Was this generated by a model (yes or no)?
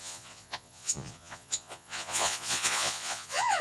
yes